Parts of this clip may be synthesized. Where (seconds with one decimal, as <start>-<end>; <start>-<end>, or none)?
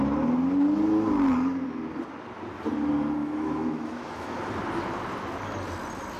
3.2-4.4